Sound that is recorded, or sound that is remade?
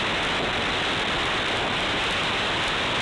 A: recorded